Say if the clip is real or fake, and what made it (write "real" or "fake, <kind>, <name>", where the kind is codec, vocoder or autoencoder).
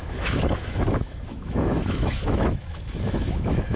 fake, autoencoder, DAC-VAE